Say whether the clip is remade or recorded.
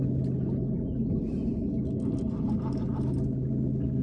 recorded